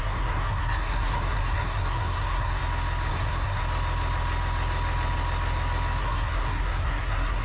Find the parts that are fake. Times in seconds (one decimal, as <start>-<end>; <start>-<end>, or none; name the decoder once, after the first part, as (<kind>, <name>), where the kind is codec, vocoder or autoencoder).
0.0-2.6 (codec, SNAC); 3.1-3.6; 6.0-7.4

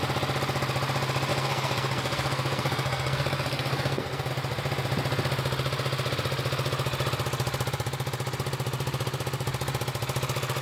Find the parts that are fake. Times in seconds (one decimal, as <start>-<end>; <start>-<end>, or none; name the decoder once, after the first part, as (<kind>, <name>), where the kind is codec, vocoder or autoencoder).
1.3-4.3 (codec, SNAC)

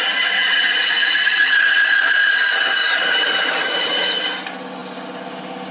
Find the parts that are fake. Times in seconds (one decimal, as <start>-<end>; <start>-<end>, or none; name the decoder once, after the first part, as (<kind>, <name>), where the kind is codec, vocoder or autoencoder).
none

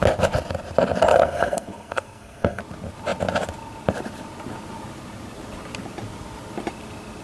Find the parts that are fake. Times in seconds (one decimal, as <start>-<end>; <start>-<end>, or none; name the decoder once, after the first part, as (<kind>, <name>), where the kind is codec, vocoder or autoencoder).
1.1-2.6 (codec, SNAC)

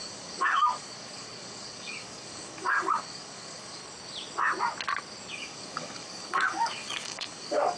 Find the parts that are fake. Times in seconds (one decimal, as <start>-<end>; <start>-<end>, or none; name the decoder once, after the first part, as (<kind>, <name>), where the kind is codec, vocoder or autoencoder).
0.0-3.8 (codec, DAC); 5.3-7.8

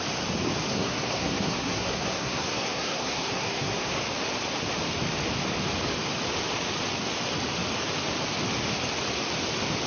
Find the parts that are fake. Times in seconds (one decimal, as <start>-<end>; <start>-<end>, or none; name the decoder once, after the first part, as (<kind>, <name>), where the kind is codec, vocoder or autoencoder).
0.7-4.0 (codec, SNAC)